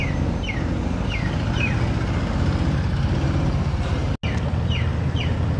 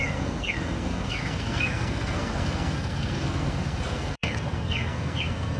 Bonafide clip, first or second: first